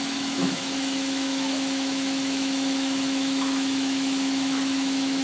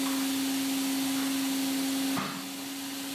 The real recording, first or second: second